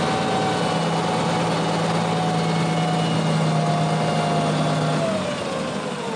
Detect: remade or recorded recorded